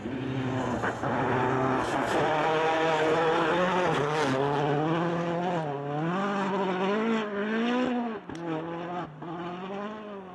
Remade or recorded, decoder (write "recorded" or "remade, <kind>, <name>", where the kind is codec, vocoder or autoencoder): recorded